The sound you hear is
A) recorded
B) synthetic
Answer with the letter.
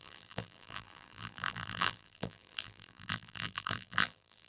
B